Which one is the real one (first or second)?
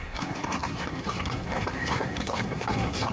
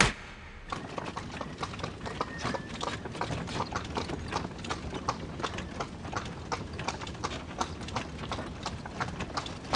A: second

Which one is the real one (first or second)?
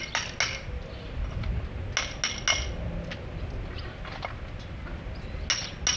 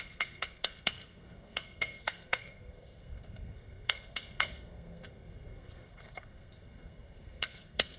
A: first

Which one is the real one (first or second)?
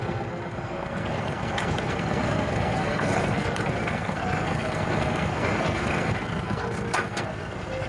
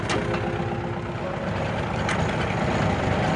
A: second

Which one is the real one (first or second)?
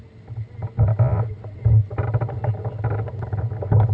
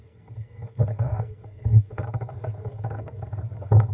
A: first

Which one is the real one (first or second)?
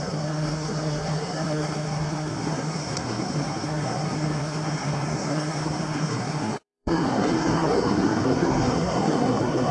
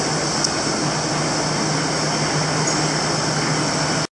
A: second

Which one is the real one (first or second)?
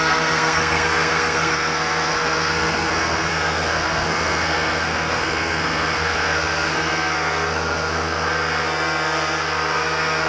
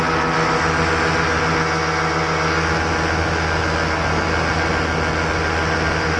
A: second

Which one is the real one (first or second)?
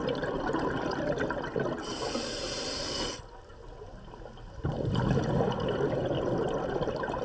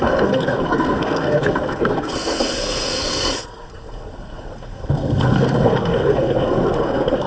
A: first